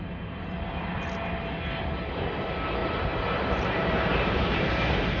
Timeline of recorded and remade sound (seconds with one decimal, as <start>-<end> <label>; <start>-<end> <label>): 0.0-2.8 recorded; 2.8-4.7 remade; 4.7-5.2 recorded